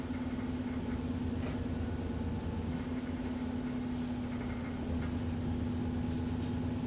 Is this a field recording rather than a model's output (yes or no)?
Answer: yes